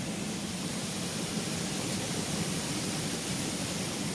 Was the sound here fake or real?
real